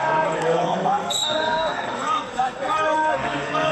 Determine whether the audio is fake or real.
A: fake